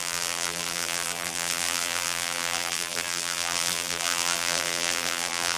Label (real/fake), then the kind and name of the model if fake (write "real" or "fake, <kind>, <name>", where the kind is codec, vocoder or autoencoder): fake, vocoder, BigVGAN v2